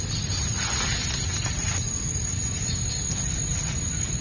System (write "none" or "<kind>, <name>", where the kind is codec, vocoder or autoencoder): none